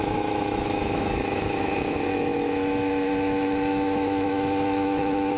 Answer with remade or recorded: remade